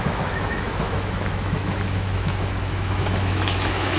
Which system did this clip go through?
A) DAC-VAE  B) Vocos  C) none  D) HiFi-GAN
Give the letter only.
A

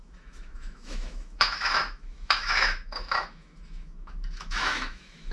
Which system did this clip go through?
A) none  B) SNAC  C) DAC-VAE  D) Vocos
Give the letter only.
C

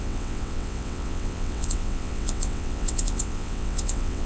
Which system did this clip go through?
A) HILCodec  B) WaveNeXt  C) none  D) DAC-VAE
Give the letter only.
B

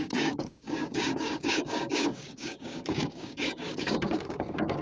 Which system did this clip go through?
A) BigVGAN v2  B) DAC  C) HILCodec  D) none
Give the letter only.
B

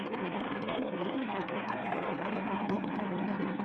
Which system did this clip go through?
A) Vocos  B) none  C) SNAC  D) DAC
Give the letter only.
C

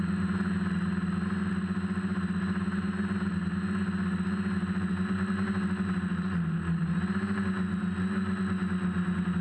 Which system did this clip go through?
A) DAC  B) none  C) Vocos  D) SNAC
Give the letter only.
B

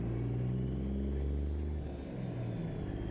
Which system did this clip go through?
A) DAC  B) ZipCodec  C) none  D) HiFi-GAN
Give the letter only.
C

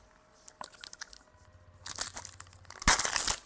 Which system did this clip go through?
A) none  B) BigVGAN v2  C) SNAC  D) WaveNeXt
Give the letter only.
A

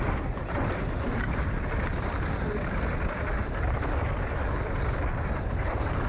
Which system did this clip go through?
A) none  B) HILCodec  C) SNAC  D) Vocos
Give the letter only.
A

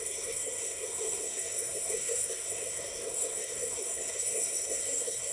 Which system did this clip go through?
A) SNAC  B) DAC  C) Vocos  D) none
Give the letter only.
A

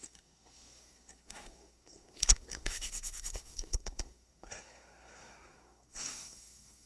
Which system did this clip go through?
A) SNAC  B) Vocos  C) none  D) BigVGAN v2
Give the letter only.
A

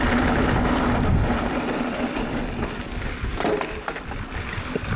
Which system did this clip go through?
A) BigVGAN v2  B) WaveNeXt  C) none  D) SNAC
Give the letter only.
C